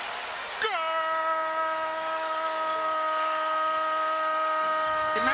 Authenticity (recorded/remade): recorded